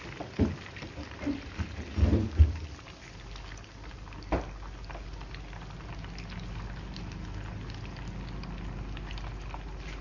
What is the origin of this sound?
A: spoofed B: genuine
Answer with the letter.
B